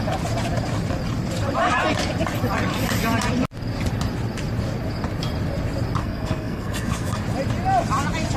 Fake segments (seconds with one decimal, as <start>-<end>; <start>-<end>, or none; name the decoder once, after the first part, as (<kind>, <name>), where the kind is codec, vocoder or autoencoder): 6.0-7.2 (codec, SNAC)